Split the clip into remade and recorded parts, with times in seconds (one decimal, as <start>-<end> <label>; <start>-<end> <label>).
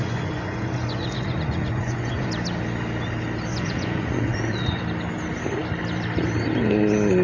0.0-2.3 remade; 2.3-3.5 recorded; 3.5-4.8 remade; 4.8-7.2 recorded